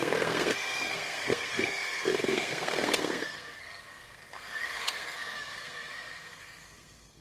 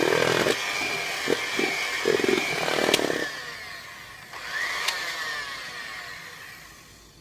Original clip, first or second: second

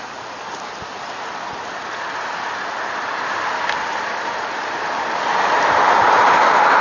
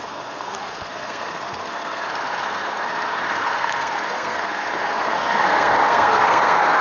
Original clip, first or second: first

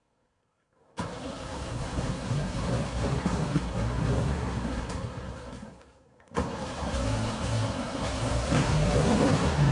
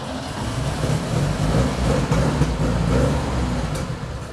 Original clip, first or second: second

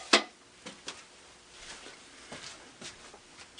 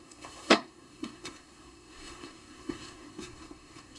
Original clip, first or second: first